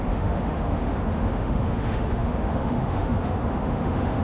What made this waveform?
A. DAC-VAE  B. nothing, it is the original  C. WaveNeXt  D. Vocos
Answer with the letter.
A